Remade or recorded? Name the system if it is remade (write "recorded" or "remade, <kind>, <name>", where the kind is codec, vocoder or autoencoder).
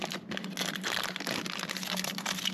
recorded